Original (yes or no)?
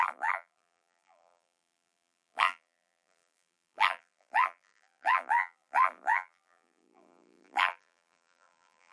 no